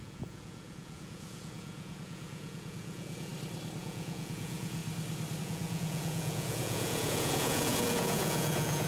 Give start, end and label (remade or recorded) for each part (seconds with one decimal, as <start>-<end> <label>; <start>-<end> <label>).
0.0-3.3 remade; 3.3-3.8 recorded; 3.8-4.8 remade; 4.8-5.4 recorded; 5.4-8.9 remade